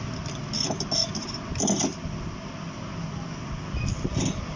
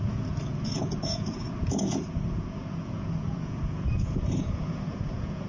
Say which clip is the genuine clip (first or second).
first